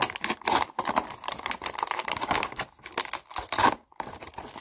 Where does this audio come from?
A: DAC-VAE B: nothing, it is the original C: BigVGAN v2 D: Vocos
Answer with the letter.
B